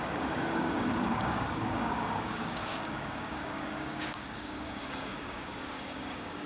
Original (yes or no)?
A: no